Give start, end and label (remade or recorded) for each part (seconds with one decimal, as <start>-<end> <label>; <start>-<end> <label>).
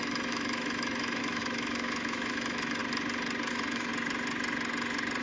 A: 0.0-2.8 remade; 2.8-3.5 recorded; 3.5-3.9 remade; 3.9-5.2 recorded